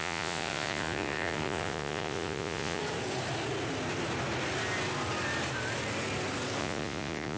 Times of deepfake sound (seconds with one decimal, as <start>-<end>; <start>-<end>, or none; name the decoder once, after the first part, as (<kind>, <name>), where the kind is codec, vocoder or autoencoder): 0.0-2.8 (vocoder, Vocos); 6.6-7.4